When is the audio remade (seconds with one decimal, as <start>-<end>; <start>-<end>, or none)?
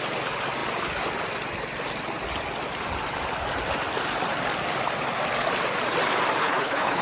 6.4-7.0